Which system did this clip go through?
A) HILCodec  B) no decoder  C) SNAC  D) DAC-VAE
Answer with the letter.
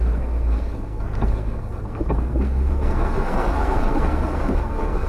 C